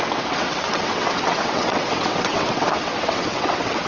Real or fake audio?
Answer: fake